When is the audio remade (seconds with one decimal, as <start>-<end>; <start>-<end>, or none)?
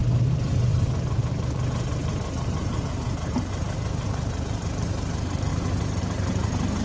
0.0-5.5; 6.0-6.8